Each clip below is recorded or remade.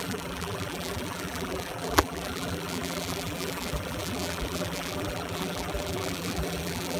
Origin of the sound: remade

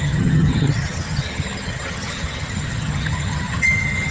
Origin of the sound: remade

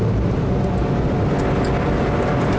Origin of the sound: recorded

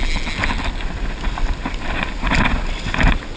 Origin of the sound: recorded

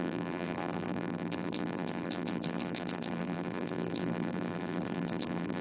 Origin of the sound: remade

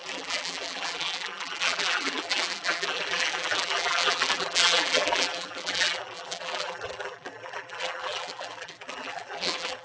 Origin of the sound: remade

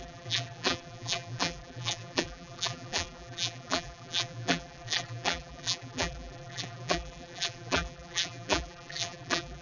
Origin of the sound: remade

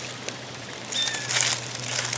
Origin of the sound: recorded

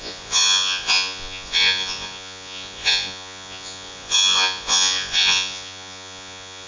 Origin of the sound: remade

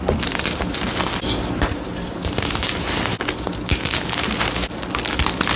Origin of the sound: recorded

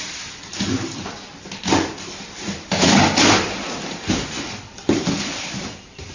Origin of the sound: remade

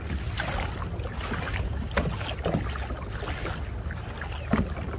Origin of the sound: recorded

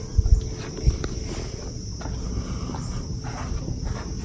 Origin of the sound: recorded